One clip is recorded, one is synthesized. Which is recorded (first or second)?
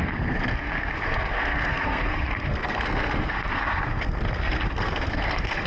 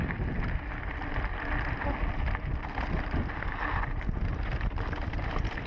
second